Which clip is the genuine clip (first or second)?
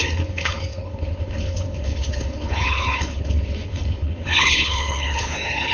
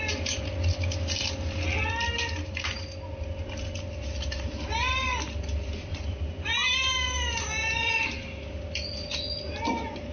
second